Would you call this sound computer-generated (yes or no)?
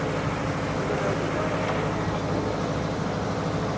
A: no